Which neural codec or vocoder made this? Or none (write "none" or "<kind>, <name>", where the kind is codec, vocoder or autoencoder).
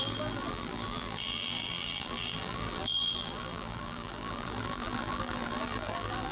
vocoder, BigVGAN v2